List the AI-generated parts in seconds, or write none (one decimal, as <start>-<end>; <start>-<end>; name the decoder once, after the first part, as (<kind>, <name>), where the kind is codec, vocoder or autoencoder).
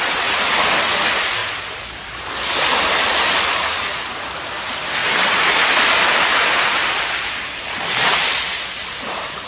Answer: none